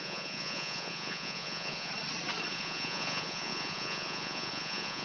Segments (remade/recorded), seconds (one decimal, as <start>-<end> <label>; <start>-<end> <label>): 0.0-1.9 remade; 1.9-2.5 recorded; 2.5-5.0 remade